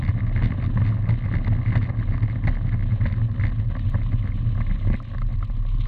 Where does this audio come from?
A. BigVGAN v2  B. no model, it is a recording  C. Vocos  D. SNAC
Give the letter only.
B